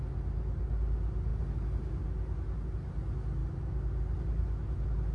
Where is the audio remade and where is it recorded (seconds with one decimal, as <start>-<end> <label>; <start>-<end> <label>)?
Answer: 0.0-5.1 recorded